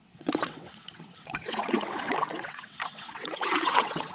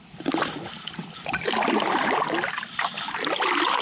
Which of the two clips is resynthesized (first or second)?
first